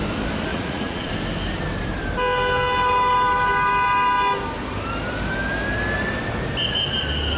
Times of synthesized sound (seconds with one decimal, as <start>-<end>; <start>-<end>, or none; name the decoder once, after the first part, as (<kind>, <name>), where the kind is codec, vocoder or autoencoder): 0.5-1.1 (vocoder, Vocos)